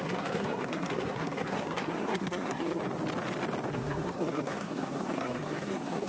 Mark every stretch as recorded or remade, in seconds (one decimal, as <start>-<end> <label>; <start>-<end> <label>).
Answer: 0.0-2.8 remade; 2.8-3.7 recorded; 3.7-6.1 remade